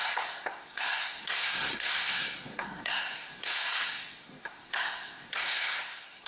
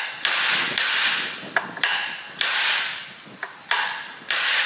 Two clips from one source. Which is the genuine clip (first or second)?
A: second